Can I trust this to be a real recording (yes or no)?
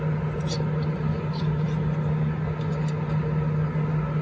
yes